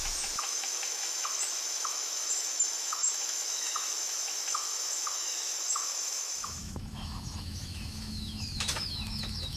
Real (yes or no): no